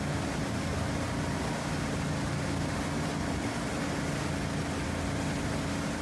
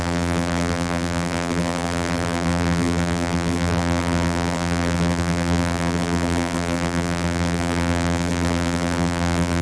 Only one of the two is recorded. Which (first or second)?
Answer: first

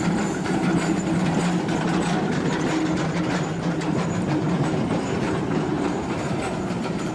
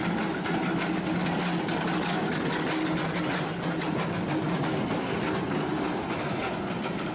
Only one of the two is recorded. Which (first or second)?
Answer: second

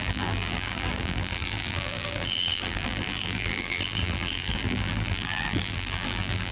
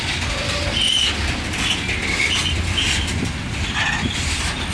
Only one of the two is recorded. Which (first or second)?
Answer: second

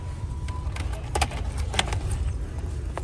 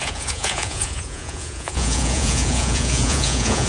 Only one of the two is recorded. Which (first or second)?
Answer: first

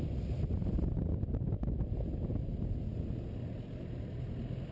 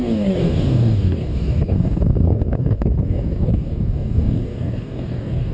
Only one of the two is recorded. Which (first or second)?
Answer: first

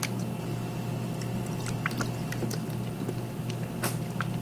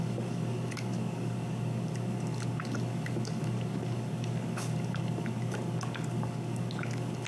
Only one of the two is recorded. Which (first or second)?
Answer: first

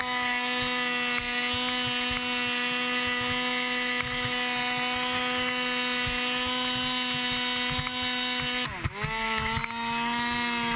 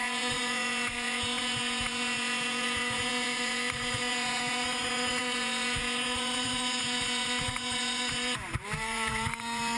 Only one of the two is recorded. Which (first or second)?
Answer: first